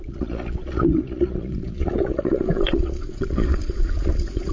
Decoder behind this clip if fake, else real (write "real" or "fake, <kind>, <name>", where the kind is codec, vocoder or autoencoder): fake, vocoder, Vocos